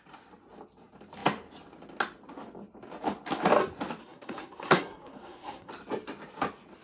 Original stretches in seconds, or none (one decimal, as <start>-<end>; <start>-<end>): 0.0-4.0; 5.7-6.8